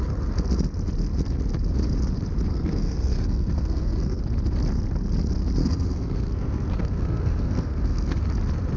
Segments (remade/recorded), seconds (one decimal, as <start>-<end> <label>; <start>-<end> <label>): 0.0-2.5 recorded; 2.5-4.2 remade; 4.2-5.6 recorded; 5.6-8.2 remade; 8.2-8.8 recorded